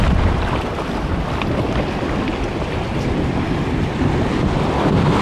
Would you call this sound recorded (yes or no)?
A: yes